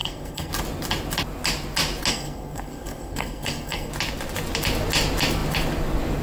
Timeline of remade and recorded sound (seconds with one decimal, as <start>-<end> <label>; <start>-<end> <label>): 0.0-0.5 remade; 0.5-2.1 recorded; 2.1-3.9 remade; 3.9-6.2 recorded